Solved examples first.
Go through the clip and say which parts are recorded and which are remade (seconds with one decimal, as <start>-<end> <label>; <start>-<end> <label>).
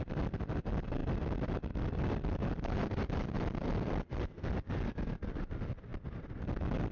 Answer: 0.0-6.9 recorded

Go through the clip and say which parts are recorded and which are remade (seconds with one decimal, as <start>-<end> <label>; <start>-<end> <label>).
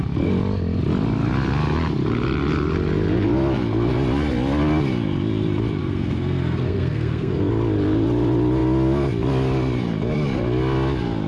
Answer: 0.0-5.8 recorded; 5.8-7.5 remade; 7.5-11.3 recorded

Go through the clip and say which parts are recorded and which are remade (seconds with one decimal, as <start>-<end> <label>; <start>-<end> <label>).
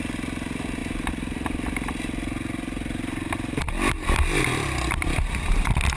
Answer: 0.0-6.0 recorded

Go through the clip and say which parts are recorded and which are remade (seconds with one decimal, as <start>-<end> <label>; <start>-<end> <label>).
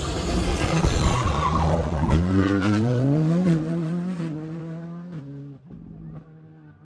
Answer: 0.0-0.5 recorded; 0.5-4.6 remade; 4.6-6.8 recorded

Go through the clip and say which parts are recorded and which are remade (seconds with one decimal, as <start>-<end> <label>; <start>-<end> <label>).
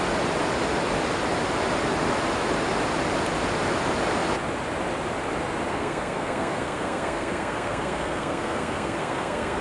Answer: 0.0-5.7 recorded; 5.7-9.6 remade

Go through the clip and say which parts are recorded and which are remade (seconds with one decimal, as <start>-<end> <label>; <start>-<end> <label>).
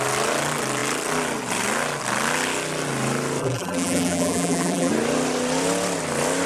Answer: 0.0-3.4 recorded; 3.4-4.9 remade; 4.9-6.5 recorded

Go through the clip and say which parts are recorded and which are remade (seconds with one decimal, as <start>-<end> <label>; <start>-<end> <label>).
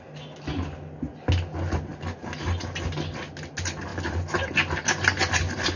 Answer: 0.0-5.8 recorded